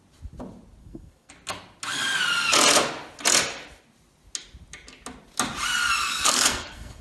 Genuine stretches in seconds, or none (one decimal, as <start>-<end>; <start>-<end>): 0.0-0.8; 1.3-6.0